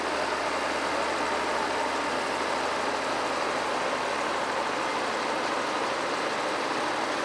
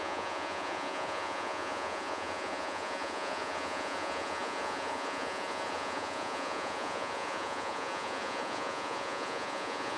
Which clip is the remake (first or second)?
second